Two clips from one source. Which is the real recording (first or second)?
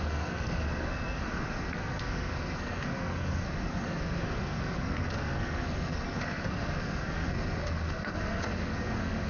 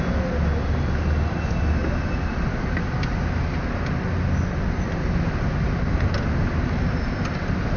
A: second